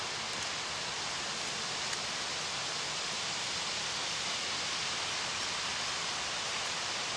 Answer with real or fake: real